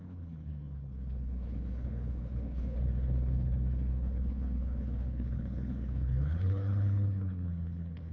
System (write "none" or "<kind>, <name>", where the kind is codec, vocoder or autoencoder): codec, HILCodec